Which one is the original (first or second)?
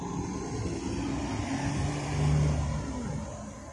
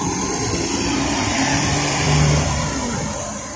first